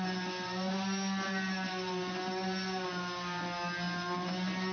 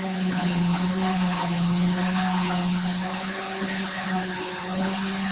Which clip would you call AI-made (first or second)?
second